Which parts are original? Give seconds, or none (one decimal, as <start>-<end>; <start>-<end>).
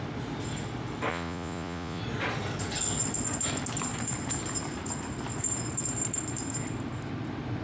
0.0-1.1; 2.0-7.6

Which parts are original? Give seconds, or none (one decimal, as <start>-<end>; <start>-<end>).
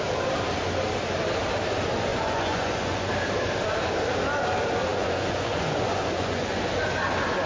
0.0-2.1; 3.1-4.9; 6.6-7.5